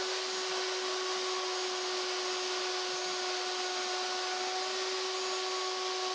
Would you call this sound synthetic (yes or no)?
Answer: no